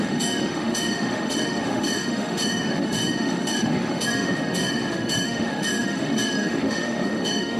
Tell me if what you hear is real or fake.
fake